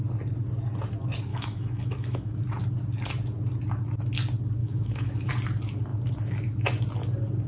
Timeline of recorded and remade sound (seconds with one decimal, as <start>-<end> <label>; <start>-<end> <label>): 0.0-1.3 recorded; 1.3-2.4 remade; 2.4-4.6 recorded; 4.6-5.3 remade; 5.3-7.5 recorded